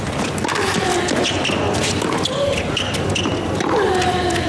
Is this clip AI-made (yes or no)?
no